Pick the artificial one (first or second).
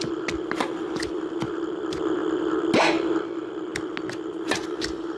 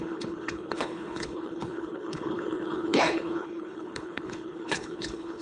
second